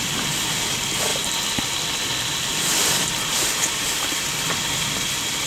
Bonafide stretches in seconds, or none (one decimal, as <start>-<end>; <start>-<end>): 0.0-5.5